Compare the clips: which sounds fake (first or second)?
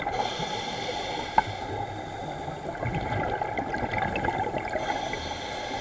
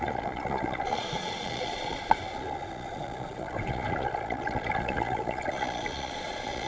second